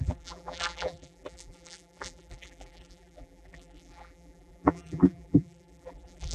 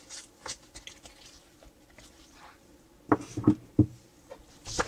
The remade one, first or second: first